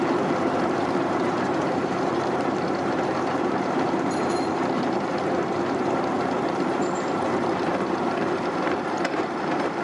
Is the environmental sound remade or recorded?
remade